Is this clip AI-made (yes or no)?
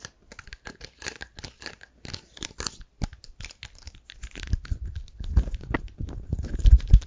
no